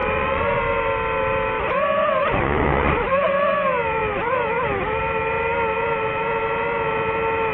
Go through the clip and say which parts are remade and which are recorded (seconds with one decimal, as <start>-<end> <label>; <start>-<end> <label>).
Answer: 0.0-0.6 remade; 0.6-2.2 recorded; 2.2-3.4 remade; 3.4-7.5 recorded